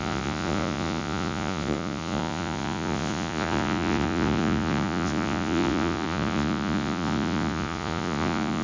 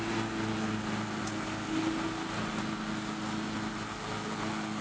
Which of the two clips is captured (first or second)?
second